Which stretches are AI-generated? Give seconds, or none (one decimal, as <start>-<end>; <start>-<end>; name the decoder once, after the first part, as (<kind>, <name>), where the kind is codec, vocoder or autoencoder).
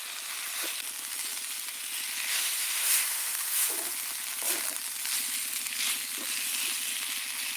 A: 2.3-3.7 (autoencoder, DAC-VAE)